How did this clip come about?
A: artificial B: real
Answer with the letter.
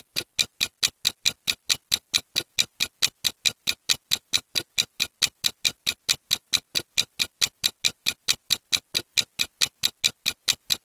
B